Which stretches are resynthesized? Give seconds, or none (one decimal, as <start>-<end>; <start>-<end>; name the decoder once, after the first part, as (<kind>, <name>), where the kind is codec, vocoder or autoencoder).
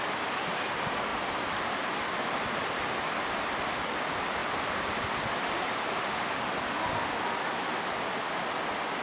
5.9-6.5 (autoencoder, DAC-VAE)